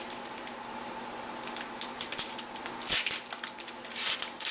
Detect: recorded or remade recorded